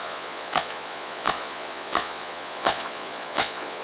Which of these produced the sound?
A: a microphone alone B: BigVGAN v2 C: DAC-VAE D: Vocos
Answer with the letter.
D